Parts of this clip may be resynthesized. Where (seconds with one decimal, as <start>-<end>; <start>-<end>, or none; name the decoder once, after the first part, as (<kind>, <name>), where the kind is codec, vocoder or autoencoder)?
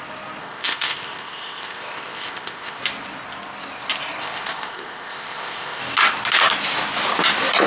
0.4-2.8 (codec, ZipCodec); 4.2-5.8